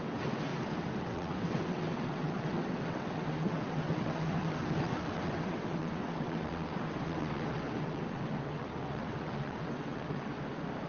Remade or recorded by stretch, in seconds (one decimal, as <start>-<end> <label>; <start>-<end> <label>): 0.0-0.5 remade; 0.5-1.0 recorded; 1.0-10.3 remade; 10.3-10.9 recorded